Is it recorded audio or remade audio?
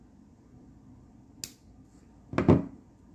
recorded